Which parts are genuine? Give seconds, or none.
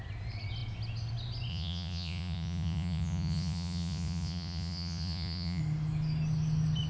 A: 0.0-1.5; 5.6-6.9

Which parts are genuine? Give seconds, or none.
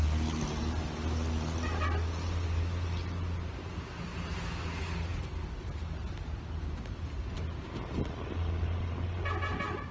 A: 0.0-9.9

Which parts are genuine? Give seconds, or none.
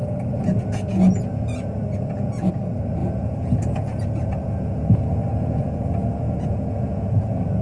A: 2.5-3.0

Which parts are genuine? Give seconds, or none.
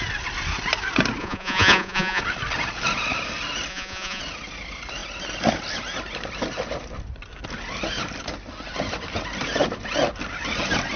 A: 0.0-1.2; 2.2-3.7; 4.2-11.0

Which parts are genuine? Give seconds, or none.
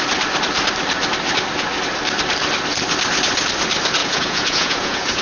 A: 0.0-4.0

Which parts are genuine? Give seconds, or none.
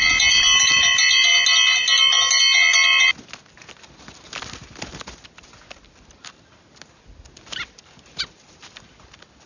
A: 0.0-9.5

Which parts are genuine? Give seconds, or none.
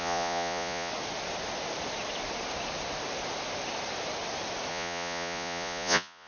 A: 0.9-4.7